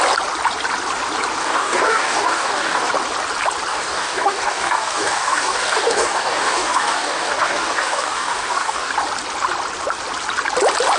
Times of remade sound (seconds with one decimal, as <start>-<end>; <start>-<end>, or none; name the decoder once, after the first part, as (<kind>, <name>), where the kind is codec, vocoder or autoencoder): 1.4-2.9 (codec, DAC); 3.7-8.9